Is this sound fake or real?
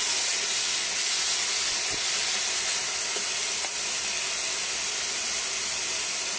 real